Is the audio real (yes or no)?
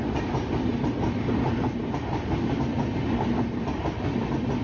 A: yes